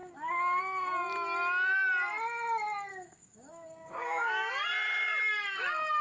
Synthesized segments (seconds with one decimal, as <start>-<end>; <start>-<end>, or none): 0.0-0.6; 2.9-4.5